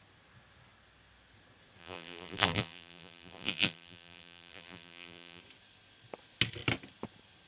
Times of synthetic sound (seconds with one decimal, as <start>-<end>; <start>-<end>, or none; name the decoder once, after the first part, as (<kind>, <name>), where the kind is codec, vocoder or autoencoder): 1.8-5.4 (vocoder, BigVGAN v2)